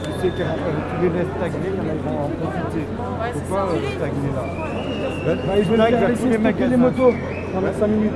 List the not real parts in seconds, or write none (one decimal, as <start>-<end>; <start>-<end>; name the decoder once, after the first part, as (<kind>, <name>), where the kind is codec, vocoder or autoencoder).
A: none